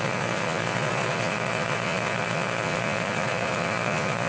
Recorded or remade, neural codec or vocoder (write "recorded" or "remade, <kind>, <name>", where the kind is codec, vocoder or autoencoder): remade, vocoder, Vocos